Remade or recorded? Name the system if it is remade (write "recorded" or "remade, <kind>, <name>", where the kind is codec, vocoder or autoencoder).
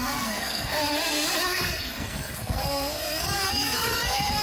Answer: remade, codec, SNAC